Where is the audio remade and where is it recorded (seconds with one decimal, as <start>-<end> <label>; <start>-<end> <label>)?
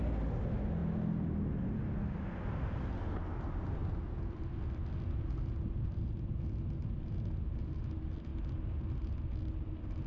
0.0-10.1 recorded